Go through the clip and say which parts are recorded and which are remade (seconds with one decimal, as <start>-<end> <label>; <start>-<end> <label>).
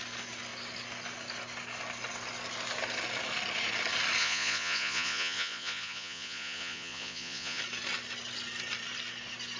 0.0-4.2 recorded; 4.2-7.6 remade; 7.6-9.6 recorded